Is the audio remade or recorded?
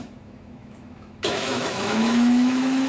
remade